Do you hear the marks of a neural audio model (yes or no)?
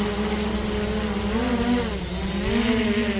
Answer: no